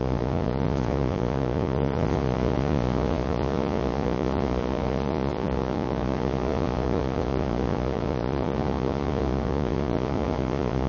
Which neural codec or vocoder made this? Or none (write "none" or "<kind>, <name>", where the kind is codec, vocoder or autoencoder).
vocoder, Vocos